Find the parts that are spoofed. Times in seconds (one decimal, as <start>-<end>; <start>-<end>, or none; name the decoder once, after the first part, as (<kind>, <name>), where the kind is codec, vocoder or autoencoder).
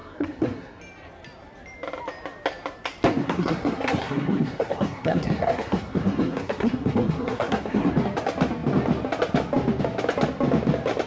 0.0-0.8 (codec, SNAC); 3.2-7.9